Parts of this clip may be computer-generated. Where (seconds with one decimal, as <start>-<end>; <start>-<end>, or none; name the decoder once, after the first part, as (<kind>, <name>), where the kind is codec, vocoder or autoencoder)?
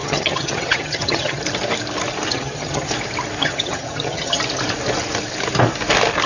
0.0-1.4 (vocoder, HiFi-GAN); 2.3-2.9; 3.4-4.4